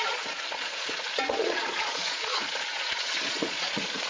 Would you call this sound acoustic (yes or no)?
no